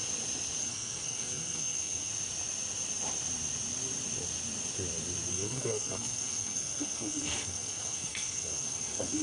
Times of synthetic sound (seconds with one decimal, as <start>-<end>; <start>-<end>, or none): 0.6-2.1; 5.3-9.2